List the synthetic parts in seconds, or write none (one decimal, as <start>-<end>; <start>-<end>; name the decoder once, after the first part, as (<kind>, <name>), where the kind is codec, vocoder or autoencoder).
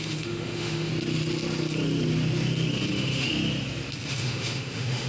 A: 0.0-0.9 (autoencoder, DAC-VAE); 2.9-3.3; 4.1-5.1